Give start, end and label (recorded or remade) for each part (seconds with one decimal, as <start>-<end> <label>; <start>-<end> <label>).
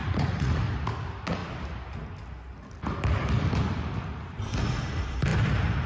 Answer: 0.0-0.5 remade; 0.5-5.9 recorded